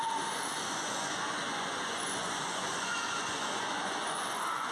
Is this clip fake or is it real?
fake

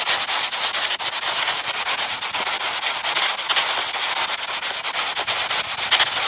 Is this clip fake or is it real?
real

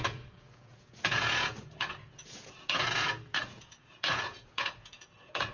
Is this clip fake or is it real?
fake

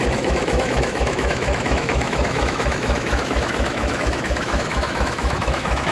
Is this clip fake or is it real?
fake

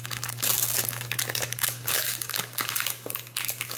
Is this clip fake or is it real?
fake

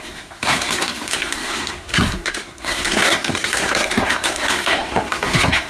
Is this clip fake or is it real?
fake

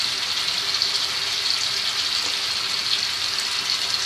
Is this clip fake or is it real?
real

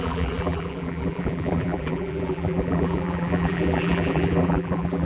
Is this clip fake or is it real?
fake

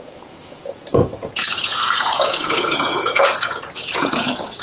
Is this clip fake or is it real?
fake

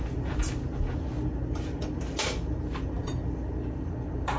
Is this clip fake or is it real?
real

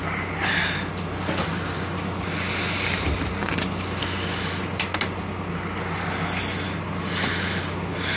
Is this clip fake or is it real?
real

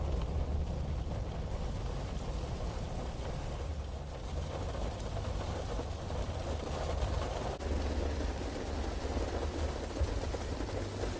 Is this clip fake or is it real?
real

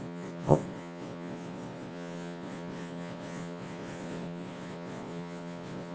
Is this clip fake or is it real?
fake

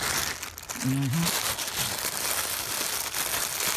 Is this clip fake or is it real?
real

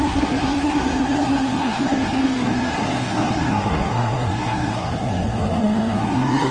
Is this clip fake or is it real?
fake